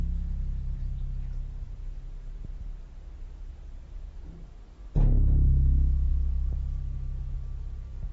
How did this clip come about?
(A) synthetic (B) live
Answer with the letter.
B